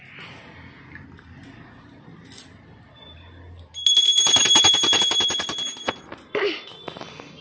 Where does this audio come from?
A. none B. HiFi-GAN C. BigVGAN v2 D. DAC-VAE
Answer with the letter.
A